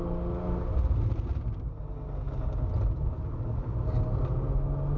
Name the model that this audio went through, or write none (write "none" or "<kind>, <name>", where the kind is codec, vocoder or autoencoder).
none